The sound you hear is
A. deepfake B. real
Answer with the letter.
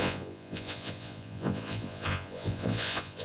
A